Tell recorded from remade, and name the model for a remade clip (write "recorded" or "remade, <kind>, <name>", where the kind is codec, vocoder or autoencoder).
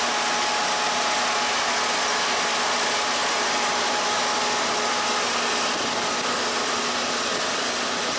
recorded